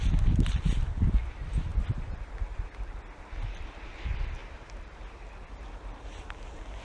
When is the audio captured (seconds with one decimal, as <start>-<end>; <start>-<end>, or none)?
0.0-1.7; 2.2-4.4; 5.0-6.8